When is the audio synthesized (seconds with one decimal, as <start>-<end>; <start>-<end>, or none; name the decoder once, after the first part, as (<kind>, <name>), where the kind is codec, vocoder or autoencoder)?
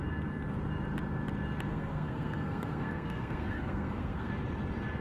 1.7-4.3 (codec, SNAC)